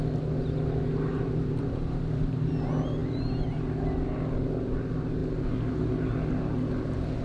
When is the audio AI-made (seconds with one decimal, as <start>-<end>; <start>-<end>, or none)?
1.1-2.5